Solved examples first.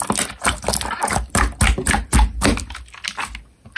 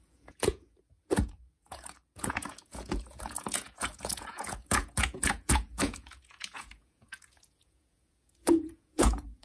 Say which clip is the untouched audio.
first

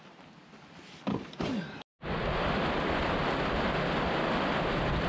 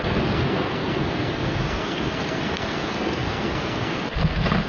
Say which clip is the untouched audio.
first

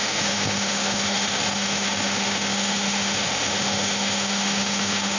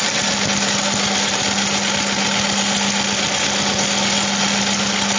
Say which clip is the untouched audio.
second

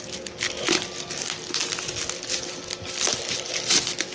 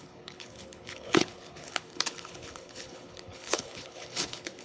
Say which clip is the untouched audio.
first